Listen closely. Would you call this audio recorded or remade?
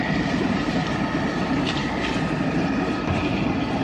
remade